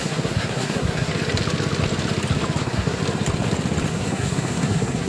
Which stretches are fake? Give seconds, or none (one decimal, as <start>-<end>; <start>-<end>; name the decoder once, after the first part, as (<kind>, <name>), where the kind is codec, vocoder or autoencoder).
0.0-1.1 (codec, SNAC); 2.6-3.0; 3.9-5.1